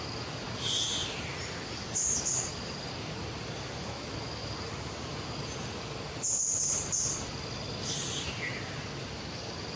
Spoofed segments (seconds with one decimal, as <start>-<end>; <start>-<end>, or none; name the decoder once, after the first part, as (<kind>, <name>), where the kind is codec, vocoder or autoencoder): 1.0-2.9 (vocoder, BigVGAN v2); 4.4-5.1